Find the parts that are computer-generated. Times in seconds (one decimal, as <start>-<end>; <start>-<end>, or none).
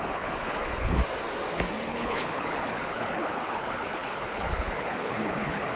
0.0-1.0; 1.8-5.8